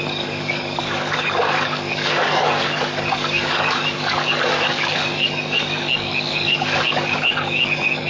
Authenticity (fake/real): fake